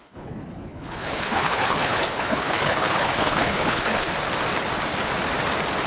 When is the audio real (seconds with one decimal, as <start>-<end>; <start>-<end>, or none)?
4.1-5.9